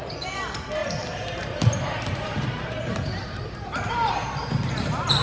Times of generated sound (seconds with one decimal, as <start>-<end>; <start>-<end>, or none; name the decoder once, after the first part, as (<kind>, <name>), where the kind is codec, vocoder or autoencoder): 0.0-5.2 (vocoder, BigVGAN v2)